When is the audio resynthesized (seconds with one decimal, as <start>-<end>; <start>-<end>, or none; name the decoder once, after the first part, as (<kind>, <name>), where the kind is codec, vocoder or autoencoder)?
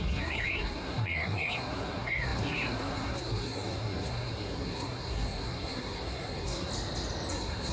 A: 0.0-6.7 (codec, SNAC); 7.3-7.7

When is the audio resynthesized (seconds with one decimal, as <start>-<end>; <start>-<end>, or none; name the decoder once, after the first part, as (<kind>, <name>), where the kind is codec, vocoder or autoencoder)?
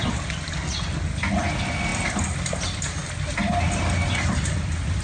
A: none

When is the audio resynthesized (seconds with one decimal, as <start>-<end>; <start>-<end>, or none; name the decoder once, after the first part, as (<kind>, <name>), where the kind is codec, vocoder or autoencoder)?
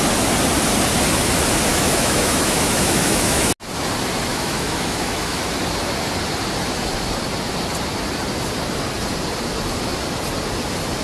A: 1.7-3.5 (autoencoder, DAC-VAE); 4.3-5.4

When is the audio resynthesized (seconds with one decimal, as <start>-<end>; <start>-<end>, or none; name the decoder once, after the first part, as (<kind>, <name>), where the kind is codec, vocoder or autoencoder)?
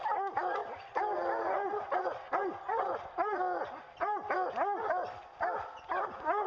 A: none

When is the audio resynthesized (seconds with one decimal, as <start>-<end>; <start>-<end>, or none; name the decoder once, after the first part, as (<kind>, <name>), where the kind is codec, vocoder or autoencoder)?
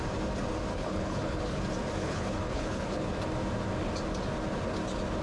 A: 0.7-1.6 (codec, HILCodec); 2.0-3.1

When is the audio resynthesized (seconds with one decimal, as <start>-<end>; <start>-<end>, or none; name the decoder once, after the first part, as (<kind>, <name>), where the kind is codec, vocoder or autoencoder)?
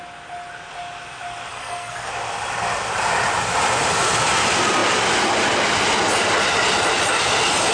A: 1.5-2.1 (codec, SNAC)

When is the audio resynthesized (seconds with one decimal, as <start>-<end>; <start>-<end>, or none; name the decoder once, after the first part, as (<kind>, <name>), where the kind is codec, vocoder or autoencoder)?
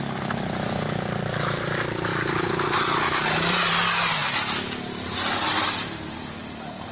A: none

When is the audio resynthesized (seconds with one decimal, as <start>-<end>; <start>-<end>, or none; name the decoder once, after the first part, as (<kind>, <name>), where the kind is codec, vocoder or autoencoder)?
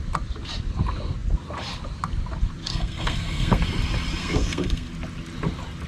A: 2.7-3.6 (codec, SNAC); 4.2-4.9